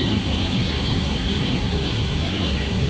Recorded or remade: remade